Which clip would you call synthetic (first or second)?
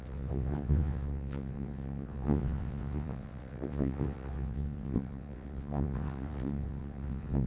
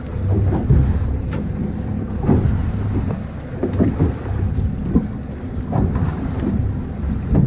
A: first